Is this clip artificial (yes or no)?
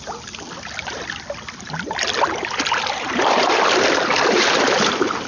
no